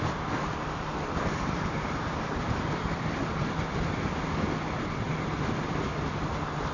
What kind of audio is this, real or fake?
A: real